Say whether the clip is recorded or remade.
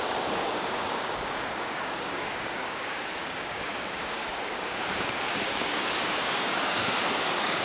remade